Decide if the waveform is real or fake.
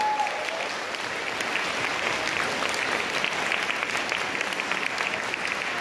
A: real